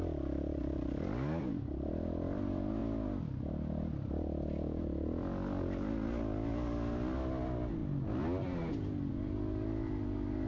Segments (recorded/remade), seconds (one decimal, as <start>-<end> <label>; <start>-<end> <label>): 0.0-10.5 recorded